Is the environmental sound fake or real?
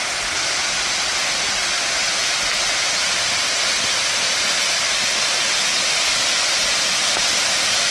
real